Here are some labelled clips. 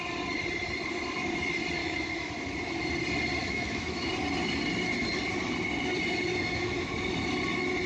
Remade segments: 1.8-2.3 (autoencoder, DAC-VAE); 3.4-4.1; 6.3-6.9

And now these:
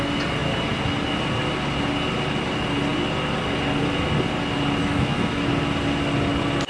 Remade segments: 4.8-5.5 (autoencoder, DAC-VAE)

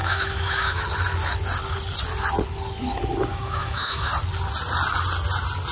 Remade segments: 0.0-0.8 (autoencoder, DAC-VAE); 3.3-4.1

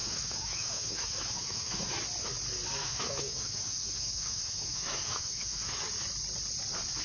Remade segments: 0.0-1.9 (autoencoder, DAC-VAE); 2.8-5.8

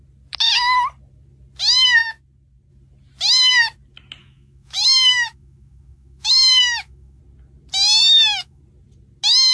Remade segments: 4.2-7.2 (autoencoder, DAC-VAE); 8.0-8.6

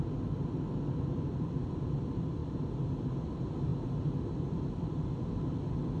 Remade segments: none

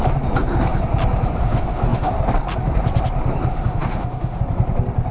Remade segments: 1.4-2.1 (autoencoder, DAC-VAE); 3.5-4.4